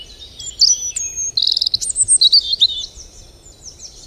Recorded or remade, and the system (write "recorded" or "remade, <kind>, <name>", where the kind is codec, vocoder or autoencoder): recorded